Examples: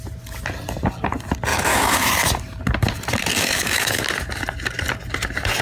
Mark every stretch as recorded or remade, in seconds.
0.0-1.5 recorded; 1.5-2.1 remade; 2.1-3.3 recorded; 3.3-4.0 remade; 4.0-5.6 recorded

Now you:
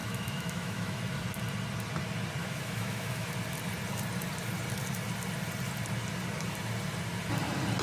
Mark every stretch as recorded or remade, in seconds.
0.0-1.0 remade; 1.0-2.4 recorded; 2.4-3.3 remade; 3.3-7.8 recorded

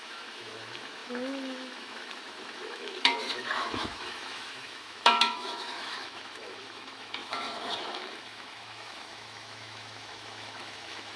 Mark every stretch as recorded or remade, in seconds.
0.0-11.2 remade

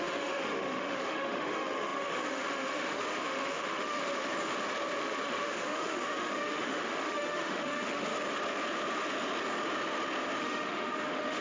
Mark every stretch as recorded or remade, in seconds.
0.0-4.0 remade; 4.0-5.0 recorded; 5.0-8.1 remade; 8.1-10.4 recorded; 10.4-11.4 remade

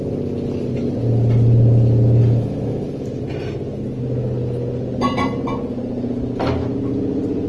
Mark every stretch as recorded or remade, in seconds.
0.0-2.2 recorded; 2.2-3.2 remade; 3.2-7.5 recorded